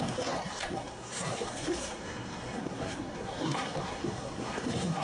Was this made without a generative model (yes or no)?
no